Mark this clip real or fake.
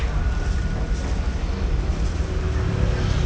real